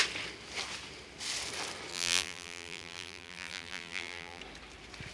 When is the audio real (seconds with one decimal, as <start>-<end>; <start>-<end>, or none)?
0.0-1.9; 4.4-5.1